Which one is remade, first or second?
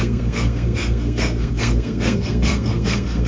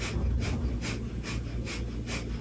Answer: first